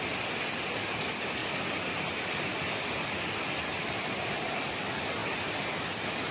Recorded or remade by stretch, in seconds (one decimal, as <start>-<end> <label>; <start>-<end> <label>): 0.0-1.4 recorded; 1.4-2.1 remade; 2.1-3.7 recorded; 3.7-4.8 remade; 4.8-6.3 recorded